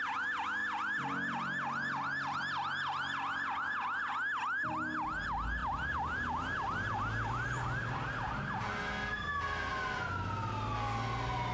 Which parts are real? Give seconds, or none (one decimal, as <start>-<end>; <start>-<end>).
0.0-5.6; 10.0-11.5

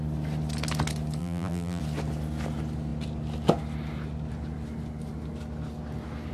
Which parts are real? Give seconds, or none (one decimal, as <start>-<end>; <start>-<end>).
0.0-1.2; 1.8-6.3

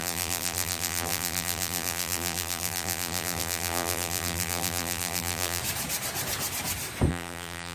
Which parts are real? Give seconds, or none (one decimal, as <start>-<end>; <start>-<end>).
5.6-7.1